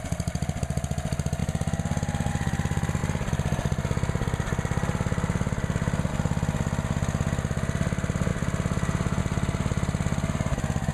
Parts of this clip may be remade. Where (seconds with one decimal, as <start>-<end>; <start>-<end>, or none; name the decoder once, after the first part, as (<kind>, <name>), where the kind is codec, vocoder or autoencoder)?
none